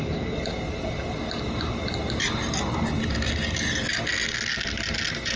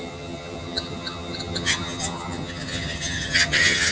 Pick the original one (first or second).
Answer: first